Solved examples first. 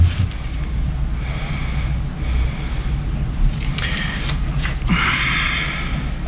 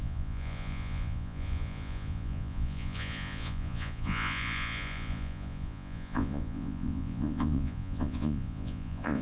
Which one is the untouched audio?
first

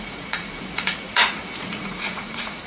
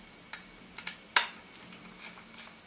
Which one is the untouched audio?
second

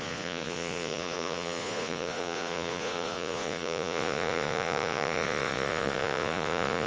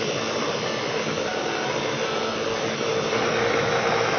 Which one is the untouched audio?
second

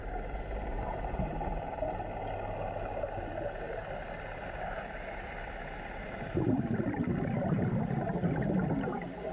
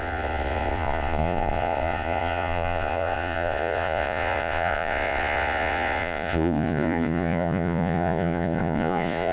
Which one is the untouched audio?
first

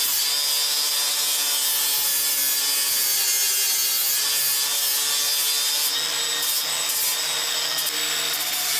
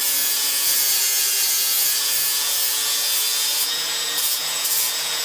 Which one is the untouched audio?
first